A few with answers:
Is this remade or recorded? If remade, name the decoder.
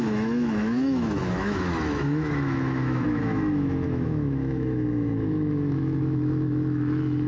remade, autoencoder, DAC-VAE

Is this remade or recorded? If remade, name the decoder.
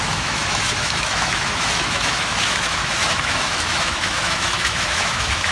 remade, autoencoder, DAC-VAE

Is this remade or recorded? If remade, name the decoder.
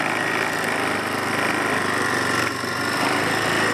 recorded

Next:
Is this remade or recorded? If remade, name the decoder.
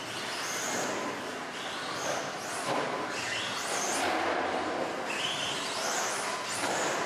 recorded